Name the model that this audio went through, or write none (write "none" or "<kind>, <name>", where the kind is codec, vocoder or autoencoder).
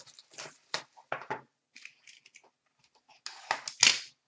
none